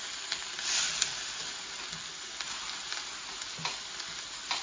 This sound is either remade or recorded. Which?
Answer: recorded